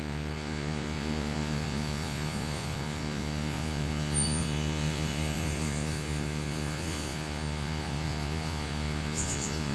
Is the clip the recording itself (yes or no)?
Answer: no